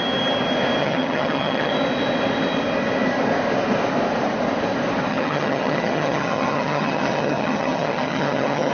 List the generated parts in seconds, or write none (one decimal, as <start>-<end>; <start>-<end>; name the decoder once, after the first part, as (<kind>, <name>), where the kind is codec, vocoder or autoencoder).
0.8-1.7 (vocoder, HiFi-GAN); 5.1-8.7